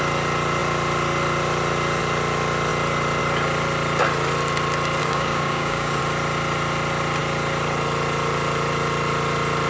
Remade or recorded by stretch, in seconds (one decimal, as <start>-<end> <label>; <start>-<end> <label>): 0.0-5.0 recorded; 5.0-6.0 remade; 6.0-9.7 recorded